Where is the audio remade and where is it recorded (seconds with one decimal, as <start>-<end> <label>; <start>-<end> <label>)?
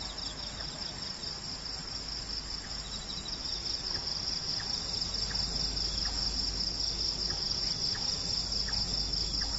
0.0-1.8 recorded; 1.8-4.8 remade; 4.8-9.6 recorded